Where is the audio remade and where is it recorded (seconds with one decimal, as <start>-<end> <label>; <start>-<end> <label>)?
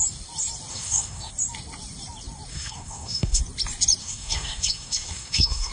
0.0-0.7 recorded; 0.7-1.3 remade; 1.3-2.5 recorded; 2.5-3.4 remade; 3.4-4.0 recorded; 4.0-5.7 remade